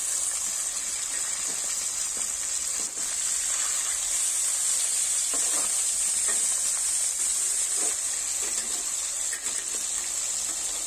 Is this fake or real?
real